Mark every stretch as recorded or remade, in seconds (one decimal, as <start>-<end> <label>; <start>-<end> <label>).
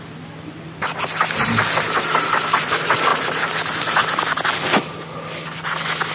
0.0-6.1 recorded